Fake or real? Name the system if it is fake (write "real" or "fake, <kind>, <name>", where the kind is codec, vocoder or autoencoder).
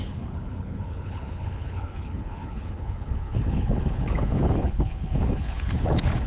fake, codec, HILCodec